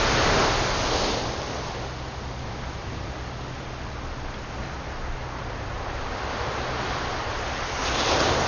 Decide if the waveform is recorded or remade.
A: recorded